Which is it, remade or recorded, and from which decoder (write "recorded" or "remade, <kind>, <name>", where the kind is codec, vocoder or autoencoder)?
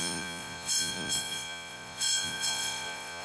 remade, vocoder, Vocos